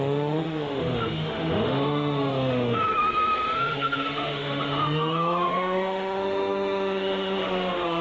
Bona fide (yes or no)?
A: no